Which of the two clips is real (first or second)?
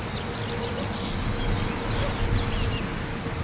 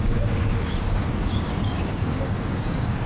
first